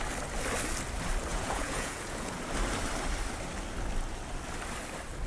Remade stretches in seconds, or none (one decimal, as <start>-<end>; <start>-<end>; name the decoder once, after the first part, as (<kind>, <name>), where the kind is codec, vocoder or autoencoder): 1.3-2.4 (vocoder, Vocos)